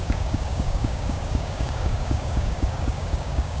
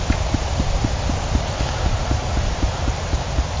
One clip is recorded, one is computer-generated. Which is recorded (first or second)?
second